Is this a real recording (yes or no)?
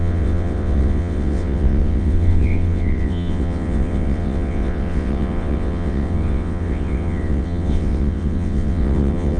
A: no